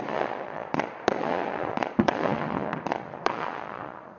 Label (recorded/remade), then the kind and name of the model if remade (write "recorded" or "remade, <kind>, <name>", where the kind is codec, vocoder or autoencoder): remade, vocoder, Vocos